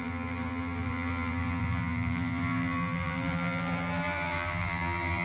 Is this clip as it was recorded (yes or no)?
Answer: no